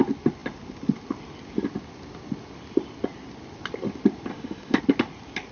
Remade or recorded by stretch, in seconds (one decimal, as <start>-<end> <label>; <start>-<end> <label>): 0.0-4.3 recorded; 4.3-4.8 remade; 4.8-5.5 recorded